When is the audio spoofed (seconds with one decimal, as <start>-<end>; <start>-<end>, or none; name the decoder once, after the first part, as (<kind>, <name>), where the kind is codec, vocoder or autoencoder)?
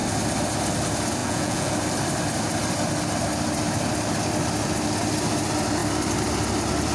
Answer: 1.2-1.7 (vocoder, Vocos)